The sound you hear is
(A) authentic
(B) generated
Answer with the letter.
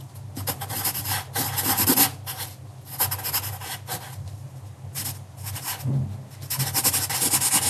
A